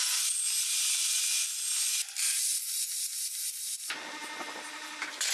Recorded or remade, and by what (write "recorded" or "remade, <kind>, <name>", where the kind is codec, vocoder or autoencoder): recorded